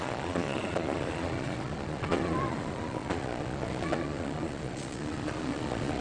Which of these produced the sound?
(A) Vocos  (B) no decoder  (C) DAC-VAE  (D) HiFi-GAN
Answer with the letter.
A